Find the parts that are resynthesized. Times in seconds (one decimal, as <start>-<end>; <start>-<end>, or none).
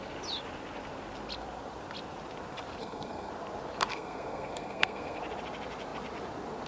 2.8-3.3; 3.9-5.2